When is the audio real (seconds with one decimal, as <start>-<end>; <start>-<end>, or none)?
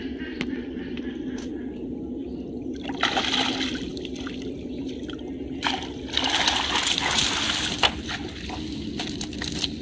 0.0-9.8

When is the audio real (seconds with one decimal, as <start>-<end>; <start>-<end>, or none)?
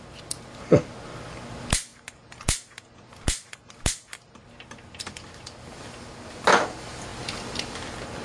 0.0-8.2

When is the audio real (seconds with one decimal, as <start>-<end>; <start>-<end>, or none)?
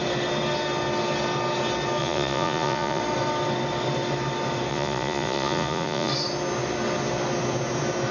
0.0-2.0; 3.0-4.7; 6.1-8.1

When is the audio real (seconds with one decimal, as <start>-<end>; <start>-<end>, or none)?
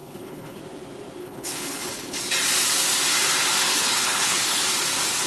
0.6-1.2; 2.2-3.7; 4.6-5.3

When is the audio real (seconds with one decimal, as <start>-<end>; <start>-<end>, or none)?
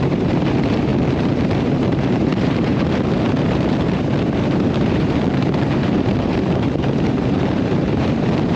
0.9-1.5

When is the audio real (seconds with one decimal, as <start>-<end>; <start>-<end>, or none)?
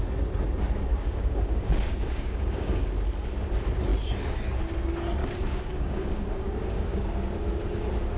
0.0-0.9; 2.8-5.2; 7.0-8.2